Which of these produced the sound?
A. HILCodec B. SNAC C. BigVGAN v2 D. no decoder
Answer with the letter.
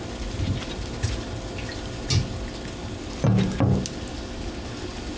D